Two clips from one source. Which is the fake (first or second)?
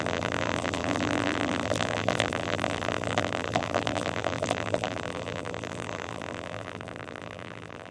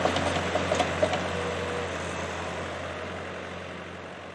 first